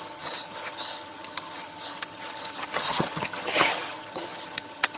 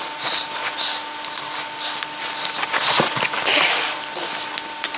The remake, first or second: first